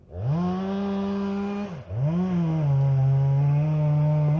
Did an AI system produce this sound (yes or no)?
no